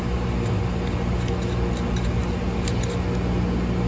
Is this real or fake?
real